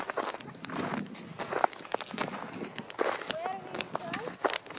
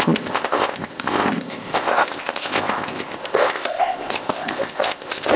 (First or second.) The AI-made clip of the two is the second